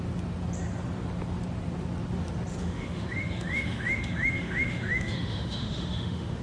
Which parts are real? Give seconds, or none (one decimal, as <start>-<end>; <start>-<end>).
0.0-2.6